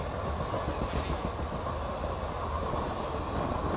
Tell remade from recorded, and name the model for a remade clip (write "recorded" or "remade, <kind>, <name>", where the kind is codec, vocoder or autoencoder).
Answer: recorded